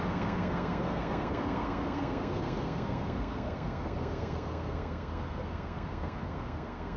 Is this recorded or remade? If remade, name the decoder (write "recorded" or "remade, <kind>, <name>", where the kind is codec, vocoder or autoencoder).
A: remade, codec, SNAC